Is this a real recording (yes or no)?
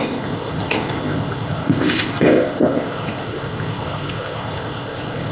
no